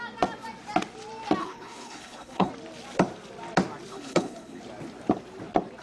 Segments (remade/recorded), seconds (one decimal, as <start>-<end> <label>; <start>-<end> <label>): 0.0-1.4 recorded; 1.4-2.5 remade; 2.5-3.9 recorded; 3.9-4.6 remade; 4.6-5.8 recorded